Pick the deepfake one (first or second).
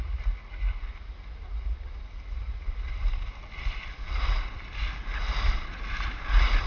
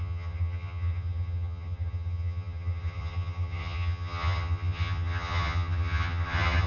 second